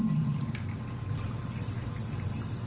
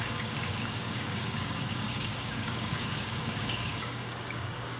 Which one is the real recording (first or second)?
first